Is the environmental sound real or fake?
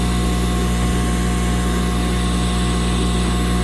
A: real